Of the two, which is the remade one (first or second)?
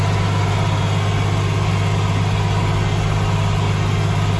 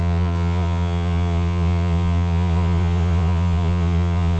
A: second